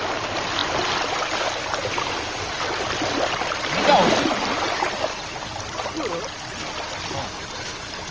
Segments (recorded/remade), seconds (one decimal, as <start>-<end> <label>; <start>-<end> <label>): 0.0-8.1 recorded